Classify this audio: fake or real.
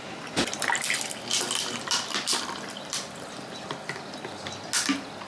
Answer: real